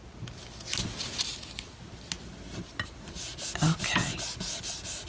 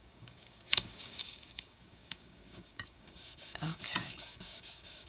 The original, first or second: first